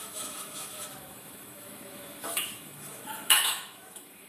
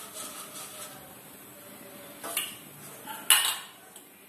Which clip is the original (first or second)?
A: second